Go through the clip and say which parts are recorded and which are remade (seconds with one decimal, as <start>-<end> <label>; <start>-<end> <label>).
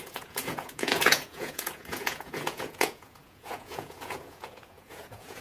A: 0.0-5.4 remade